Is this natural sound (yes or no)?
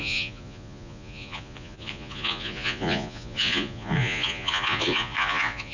no